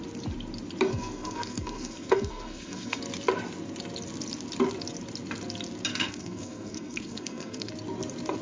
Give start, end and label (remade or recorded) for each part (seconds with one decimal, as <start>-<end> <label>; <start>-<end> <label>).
0.0-0.9 recorded; 0.9-3.0 remade; 3.0-5.9 recorded; 5.9-7.7 remade; 7.7-8.4 recorded